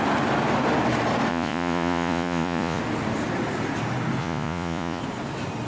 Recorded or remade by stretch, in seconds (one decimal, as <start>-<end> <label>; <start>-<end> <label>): 0.0-1.3 recorded; 1.3-2.8 remade; 2.8-4.2 recorded; 4.2-5.0 remade; 5.0-5.7 recorded